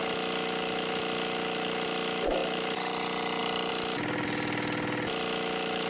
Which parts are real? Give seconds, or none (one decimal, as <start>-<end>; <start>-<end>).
0.0-5.9